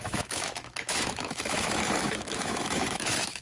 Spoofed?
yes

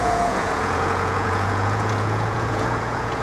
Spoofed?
yes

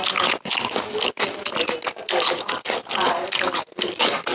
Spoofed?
no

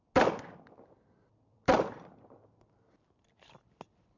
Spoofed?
no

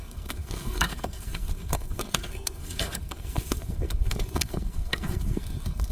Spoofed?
yes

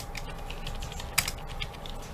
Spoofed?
no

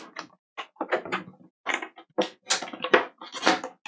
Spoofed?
no